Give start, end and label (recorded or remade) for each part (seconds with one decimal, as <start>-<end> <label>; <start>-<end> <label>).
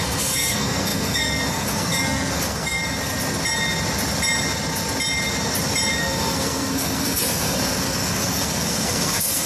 0.0-2.8 remade; 2.8-6.0 recorded; 6.0-9.5 remade